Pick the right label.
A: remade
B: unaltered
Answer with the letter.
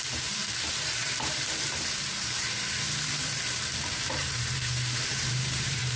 A